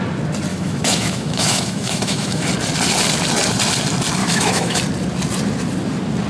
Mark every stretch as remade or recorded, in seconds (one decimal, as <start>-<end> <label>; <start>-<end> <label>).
0.0-0.5 recorded; 0.5-2.5 remade; 2.5-4.2 recorded; 4.2-4.8 remade; 4.8-6.3 recorded